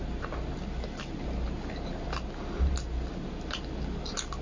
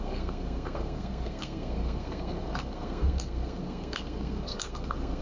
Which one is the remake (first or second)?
second